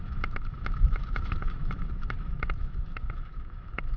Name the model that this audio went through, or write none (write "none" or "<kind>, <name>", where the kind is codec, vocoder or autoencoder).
autoencoder, DAC-VAE